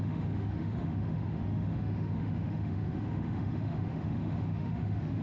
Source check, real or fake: fake